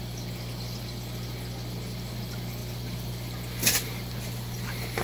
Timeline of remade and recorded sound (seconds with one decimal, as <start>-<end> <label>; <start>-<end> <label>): 0.0-5.0 recorded